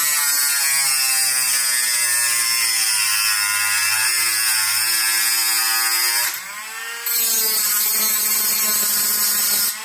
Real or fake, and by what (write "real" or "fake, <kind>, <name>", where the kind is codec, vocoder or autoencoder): real